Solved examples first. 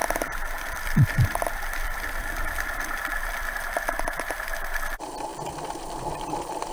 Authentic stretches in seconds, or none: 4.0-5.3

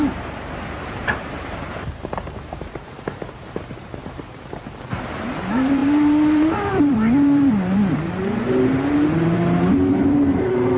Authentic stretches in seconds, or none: none

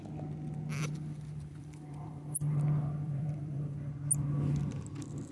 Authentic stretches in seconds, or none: 0.0-0.7; 3.9-5.3

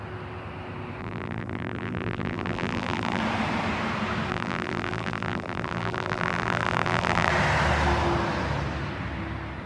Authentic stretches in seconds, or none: 0.0-1.0; 3.2-4.3; 7.3-9.7

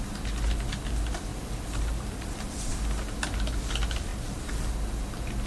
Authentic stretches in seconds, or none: 0.0-1.3; 2.8-4.1; 4.7-5.5

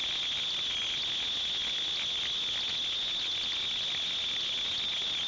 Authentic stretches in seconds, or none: 0.0-5.3

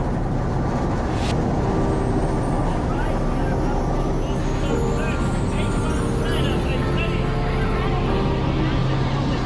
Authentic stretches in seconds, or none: 0.0-2.2; 3.3-8.8

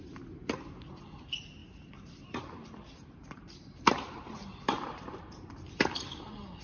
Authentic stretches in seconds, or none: 0.0-1.6; 5.6-6.6